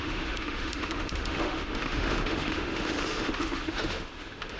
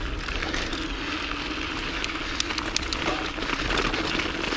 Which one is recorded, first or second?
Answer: second